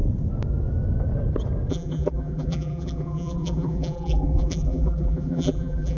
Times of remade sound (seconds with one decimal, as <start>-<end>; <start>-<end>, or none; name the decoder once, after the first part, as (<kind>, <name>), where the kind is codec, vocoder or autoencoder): 1.7-6.0 (vocoder, BigVGAN v2)